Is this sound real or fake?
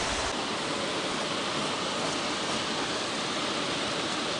real